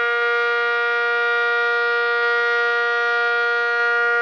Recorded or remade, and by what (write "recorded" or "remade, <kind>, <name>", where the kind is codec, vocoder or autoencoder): recorded